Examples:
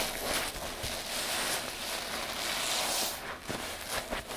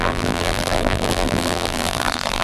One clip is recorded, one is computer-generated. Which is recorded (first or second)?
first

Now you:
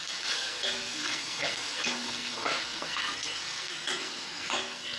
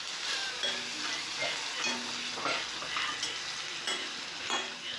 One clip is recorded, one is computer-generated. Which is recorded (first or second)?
second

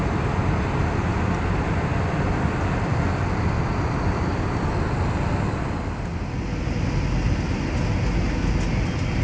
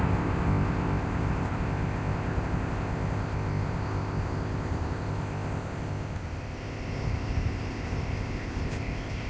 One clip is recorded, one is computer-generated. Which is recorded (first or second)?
first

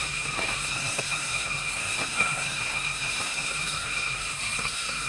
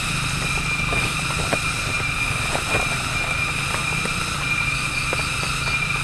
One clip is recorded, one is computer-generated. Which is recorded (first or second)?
second